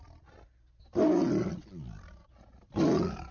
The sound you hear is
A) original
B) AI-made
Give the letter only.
A